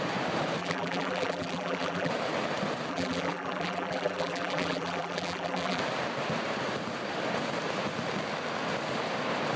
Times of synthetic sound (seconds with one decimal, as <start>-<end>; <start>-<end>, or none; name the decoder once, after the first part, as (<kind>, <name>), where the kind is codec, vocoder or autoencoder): 0.6-2.1 (vocoder, BigVGAN v2); 2.9-5.8